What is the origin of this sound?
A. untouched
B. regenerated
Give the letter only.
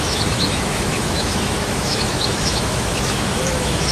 B